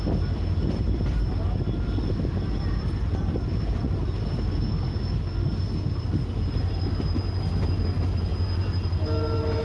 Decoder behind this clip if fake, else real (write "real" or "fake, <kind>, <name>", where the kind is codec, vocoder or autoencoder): real